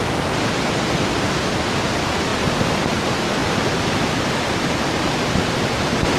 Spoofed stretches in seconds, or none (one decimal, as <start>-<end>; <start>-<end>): none